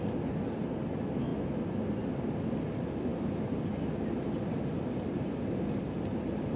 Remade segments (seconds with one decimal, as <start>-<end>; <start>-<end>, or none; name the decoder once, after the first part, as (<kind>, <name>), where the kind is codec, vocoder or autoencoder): none